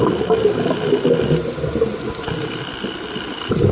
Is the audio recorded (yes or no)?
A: yes